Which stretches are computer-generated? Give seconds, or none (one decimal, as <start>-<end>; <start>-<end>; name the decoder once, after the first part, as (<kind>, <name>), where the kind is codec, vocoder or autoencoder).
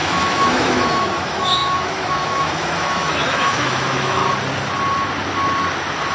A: 0.0-4.2 (autoencoder, DAC-VAE)